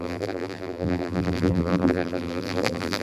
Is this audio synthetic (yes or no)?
yes